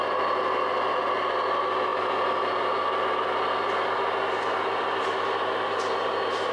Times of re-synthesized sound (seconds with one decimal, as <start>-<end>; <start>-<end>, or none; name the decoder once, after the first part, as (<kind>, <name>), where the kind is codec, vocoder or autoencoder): none